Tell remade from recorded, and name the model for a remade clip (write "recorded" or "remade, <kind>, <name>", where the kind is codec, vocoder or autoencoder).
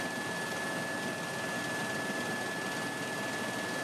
recorded